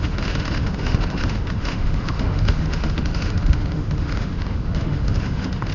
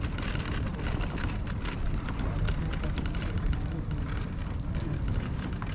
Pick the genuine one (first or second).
second